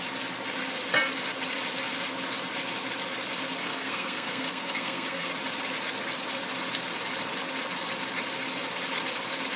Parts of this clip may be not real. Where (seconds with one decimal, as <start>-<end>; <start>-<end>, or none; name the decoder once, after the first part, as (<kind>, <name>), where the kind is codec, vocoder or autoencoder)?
3.6-5.3 (codec, SNAC)

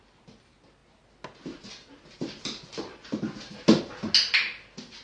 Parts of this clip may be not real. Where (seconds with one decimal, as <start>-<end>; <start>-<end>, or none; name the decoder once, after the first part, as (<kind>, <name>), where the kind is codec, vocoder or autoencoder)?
none

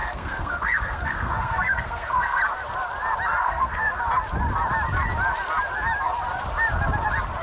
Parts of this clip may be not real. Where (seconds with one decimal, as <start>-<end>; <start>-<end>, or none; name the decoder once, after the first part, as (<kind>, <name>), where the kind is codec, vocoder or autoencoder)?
0.0-2.4 (codec, SNAC); 3.4-4.0

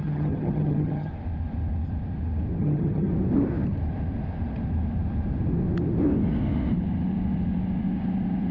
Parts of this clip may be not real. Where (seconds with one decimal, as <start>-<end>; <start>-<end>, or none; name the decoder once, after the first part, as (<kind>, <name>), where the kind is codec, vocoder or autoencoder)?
0.0-1.1 (vocoder, HiFi-GAN); 2.6-3.1

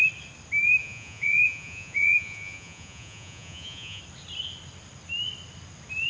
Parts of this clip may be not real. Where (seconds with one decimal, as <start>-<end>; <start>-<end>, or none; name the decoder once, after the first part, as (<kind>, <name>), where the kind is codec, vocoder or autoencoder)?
0.8-4.0 (vocoder, Vocos)